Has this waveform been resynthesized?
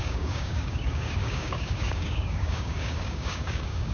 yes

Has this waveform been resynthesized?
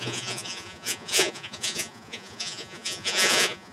yes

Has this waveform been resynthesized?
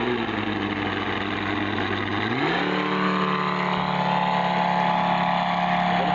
no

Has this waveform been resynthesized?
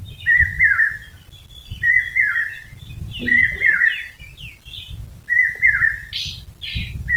no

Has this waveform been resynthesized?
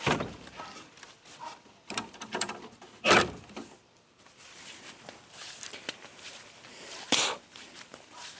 yes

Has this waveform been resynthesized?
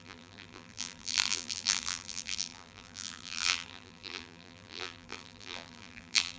yes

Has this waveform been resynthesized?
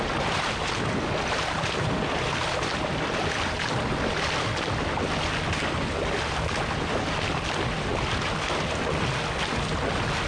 no